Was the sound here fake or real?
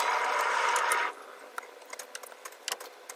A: real